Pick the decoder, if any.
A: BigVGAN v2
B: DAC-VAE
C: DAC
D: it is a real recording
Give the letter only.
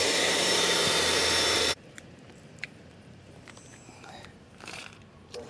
A